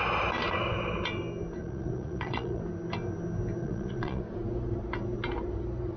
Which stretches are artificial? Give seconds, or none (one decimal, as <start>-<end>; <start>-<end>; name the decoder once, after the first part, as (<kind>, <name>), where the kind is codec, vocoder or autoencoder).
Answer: 1.6-2.6 (vocoder, Vocos); 3.6-4.2